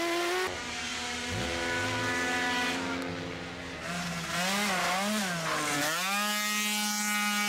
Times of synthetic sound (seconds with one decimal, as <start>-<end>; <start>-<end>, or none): none